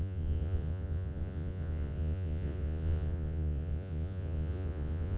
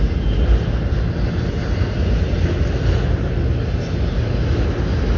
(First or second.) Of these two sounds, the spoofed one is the first